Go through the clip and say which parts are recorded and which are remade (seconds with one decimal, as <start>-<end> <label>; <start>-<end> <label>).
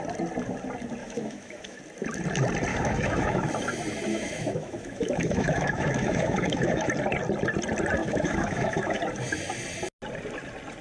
0.0-1.0 recorded; 1.0-1.8 remade; 1.8-2.7 recorded; 2.7-3.5 remade; 3.5-4.1 recorded; 4.1-6.9 remade; 6.9-8.0 recorded; 8.0-9.0 remade; 9.0-10.8 recorded